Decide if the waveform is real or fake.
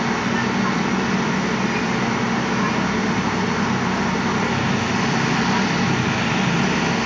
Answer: real